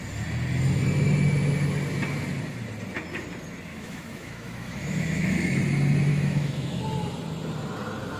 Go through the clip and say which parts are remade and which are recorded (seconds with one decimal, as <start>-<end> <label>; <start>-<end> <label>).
0.0-3.7 recorded; 3.7-5.6 remade; 5.6-6.1 recorded; 6.1-6.8 remade; 6.8-8.2 recorded